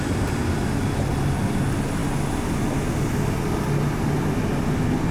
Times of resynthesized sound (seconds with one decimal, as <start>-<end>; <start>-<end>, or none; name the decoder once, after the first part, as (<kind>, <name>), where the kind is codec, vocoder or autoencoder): 0.4-0.9 (vocoder, BigVGAN v2)